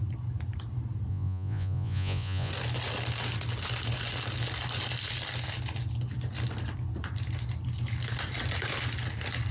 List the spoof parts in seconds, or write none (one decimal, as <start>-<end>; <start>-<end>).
1.1-2.5